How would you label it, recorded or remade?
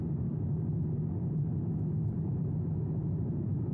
recorded